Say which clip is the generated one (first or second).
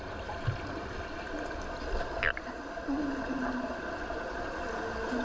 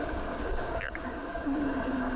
second